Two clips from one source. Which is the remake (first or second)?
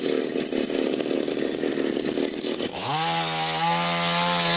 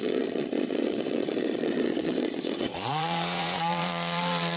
second